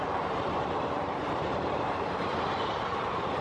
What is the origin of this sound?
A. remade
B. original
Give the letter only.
A